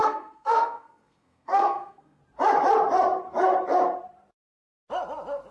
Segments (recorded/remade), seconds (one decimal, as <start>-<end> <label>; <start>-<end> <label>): 0.0-2.2 remade; 2.2-5.5 recorded